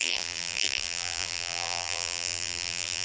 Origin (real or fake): fake